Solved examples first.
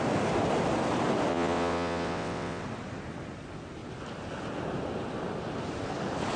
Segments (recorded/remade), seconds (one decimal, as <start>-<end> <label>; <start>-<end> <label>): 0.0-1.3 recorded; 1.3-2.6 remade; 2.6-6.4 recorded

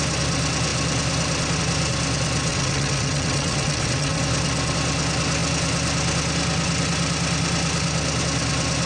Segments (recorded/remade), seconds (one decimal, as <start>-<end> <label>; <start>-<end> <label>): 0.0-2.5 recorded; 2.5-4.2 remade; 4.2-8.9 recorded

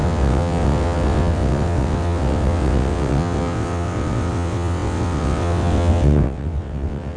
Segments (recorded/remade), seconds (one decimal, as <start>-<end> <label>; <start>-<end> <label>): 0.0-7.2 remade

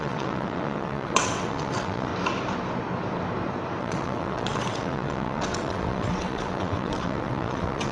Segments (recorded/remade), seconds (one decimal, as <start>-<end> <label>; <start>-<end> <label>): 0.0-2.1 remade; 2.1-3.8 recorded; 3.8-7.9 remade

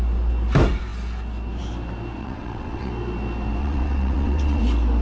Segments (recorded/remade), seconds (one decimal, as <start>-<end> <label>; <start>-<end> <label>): 0.0-2.2 recorded; 2.2-2.9 remade; 2.9-3.6 recorded; 3.6-4.6 remade; 4.6-5.0 recorded

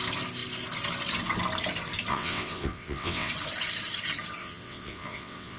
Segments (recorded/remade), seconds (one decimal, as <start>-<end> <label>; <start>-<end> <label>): 0.0-2.1 recorded; 2.1-3.3 remade; 3.3-4.4 recorded; 4.4-5.6 remade

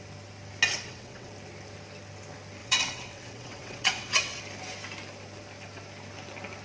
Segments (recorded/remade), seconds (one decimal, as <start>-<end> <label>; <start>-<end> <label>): 0.0-0.7 recorded; 0.7-1.3 remade; 1.3-2.6 recorded; 2.6-4.4 remade; 4.4-6.6 recorded

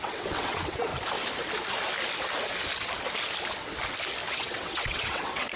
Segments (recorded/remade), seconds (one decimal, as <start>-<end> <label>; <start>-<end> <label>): 0.0-0.9 remade; 0.9-4.3 recorded; 4.3-5.6 remade